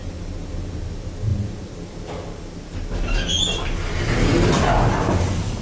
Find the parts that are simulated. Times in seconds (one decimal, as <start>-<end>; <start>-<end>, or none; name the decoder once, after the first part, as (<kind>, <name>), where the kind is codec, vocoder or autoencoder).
none

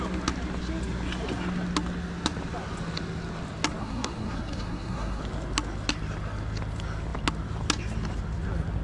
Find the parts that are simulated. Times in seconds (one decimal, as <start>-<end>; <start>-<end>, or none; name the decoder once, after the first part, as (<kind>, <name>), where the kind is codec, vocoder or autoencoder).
3.8-5.2 (codec, SNAC)